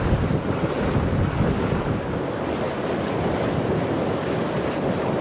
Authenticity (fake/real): real